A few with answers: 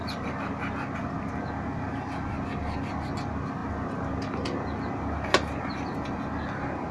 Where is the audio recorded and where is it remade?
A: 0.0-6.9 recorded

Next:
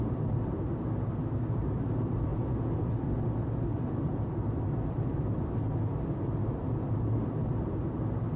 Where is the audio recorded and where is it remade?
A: 0.0-2.3 remade; 2.3-2.9 recorded; 2.9-8.4 remade

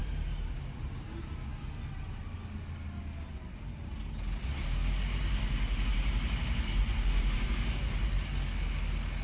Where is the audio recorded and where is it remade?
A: 0.0-0.6 remade; 0.6-5.9 recorded; 5.9-8.3 remade; 8.3-9.2 recorded

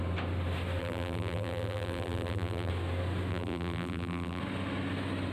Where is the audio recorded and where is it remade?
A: 0.0-0.8 recorded; 0.8-2.7 remade; 2.7-3.3 recorded; 3.3-4.4 remade; 4.4-5.3 recorded